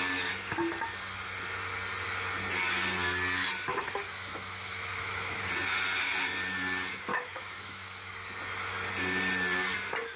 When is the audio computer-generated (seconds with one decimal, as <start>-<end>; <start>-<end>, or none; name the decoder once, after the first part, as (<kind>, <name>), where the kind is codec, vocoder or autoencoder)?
3.7-5.4 (autoencoder, DAC-VAE); 7.1-8.1